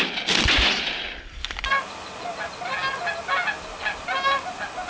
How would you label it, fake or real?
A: real